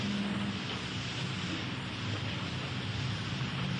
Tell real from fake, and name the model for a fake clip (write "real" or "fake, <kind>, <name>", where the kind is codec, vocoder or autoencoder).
real